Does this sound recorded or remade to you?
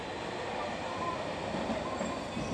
recorded